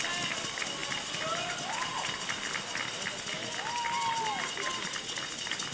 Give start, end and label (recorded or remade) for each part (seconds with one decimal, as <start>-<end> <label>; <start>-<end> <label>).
0.0-5.7 recorded